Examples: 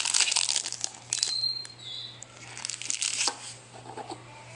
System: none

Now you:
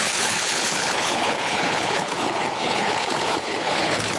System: codec, HILCodec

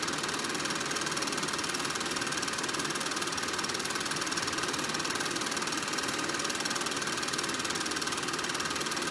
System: none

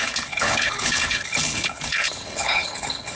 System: codec, HILCodec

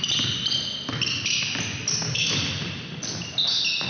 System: none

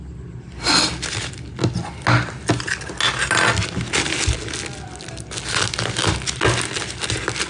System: none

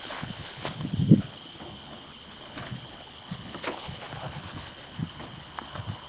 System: codec, HILCodec